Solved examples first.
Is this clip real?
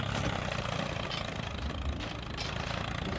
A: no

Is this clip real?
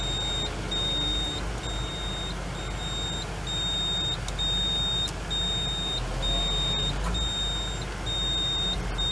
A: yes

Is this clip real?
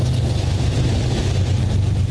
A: yes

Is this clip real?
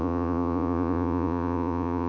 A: no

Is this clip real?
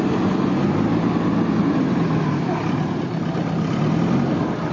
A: yes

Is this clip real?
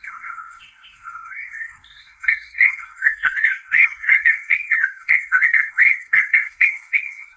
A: no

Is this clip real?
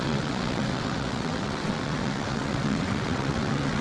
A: no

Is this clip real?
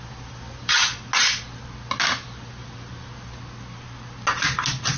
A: yes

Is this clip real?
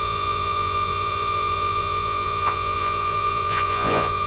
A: no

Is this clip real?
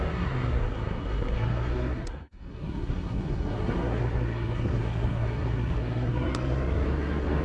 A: no